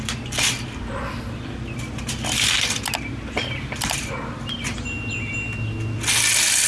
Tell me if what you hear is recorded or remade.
recorded